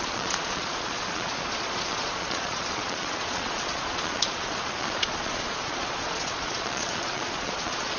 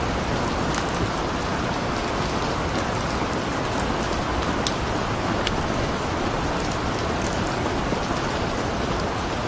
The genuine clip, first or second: second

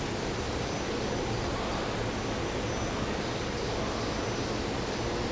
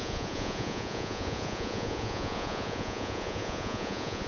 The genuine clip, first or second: first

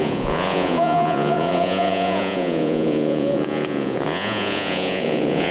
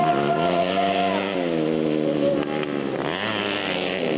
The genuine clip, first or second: second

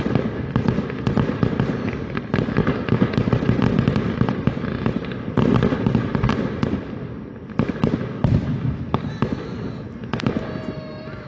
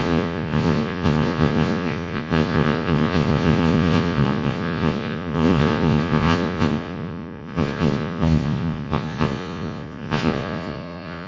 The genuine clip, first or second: first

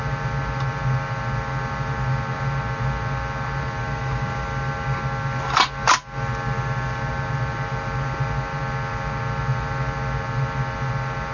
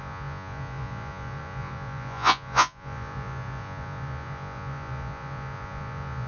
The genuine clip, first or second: first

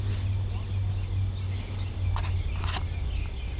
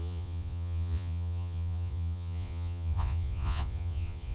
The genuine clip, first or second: first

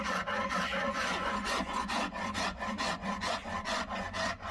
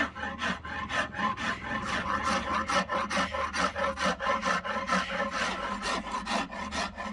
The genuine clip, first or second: second